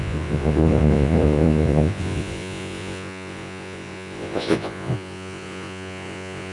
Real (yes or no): no